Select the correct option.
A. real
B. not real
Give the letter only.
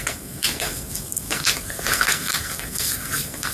B